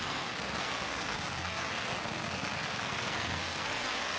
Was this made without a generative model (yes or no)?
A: no